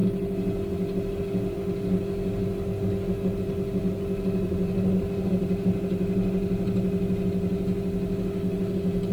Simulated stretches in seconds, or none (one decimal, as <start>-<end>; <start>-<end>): none